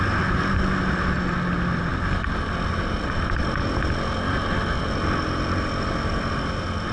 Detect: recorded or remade recorded